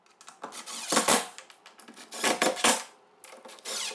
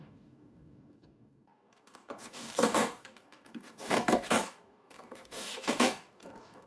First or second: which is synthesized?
second